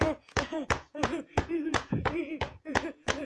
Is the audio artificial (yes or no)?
yes